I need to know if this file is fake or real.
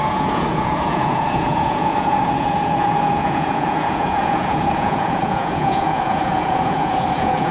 fake